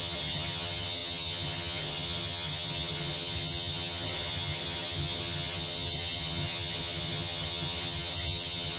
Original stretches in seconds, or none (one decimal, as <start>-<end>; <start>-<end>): none